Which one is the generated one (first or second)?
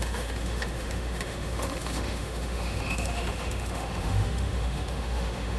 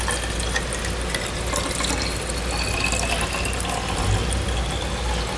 first